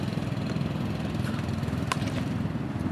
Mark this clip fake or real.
fake